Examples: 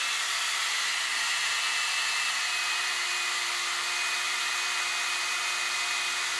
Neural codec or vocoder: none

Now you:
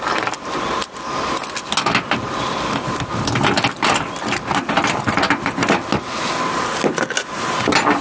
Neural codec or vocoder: none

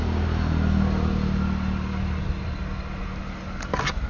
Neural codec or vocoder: none